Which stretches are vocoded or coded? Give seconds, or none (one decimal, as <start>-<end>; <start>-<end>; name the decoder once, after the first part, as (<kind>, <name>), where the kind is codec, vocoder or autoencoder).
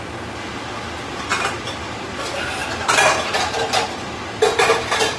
none